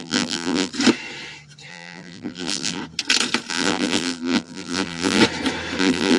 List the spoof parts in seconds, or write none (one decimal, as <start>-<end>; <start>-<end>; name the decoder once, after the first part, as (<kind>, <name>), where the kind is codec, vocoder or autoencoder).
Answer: 0.0-0.7 (vocoder, BigVGAN v2); 1.7-2.8; 3.5-5.2; 5.8-6.2